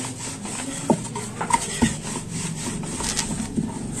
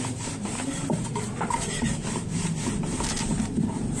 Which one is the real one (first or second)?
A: first